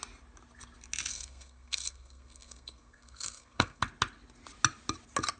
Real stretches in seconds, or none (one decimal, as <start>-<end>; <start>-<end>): 0.0-1.1; 3.8-5.4